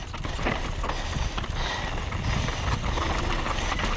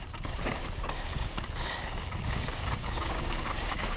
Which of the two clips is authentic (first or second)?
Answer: first